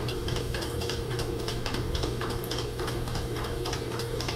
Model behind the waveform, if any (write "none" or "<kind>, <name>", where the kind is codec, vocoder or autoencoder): codec, DAC